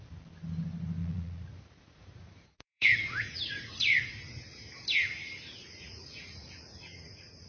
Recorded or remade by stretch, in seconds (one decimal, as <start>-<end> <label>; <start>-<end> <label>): 0.0-1.0 recorded; 1.0-4.0 remade; 4.0-5.6 recorded; 5.6-7.5 remade